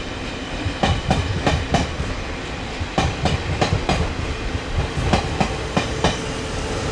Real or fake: real